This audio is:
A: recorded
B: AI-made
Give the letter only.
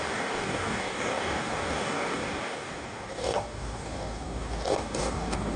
B